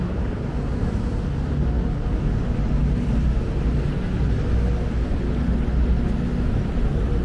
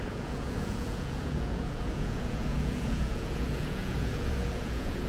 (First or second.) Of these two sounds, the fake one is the second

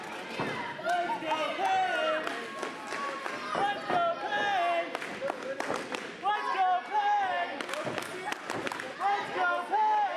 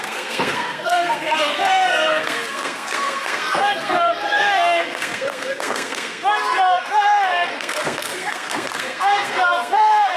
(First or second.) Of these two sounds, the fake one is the second